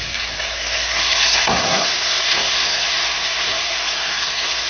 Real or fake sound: fake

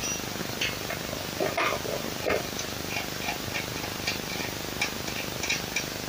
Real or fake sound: real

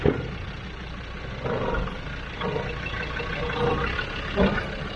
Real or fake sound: real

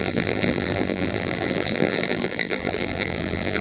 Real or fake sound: fake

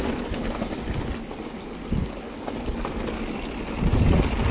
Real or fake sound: real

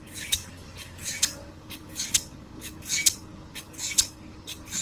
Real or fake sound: fake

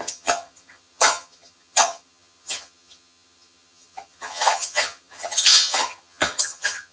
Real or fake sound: fake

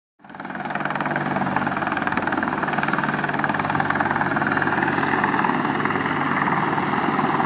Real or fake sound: real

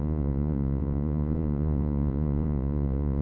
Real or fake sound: fake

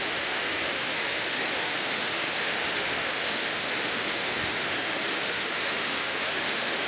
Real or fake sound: fake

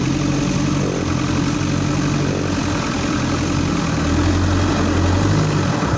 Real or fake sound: real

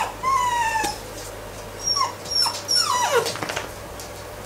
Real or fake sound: real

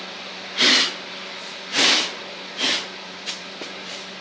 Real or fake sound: fake